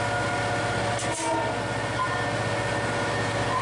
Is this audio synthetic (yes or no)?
no